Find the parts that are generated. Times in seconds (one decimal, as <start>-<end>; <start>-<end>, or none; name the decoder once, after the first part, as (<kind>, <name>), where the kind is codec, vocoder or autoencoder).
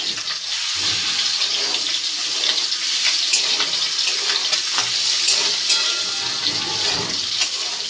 none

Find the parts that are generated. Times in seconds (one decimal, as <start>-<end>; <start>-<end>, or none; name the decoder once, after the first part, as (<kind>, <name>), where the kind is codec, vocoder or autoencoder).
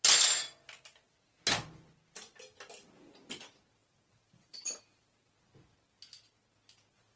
3.8-4.8 (vocoder, BigVGAN v2)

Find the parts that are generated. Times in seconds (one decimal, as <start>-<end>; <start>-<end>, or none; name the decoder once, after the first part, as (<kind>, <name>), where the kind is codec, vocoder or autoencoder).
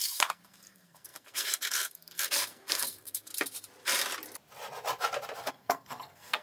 0.0-3.3 (codec, SNAC); 5.5-6.4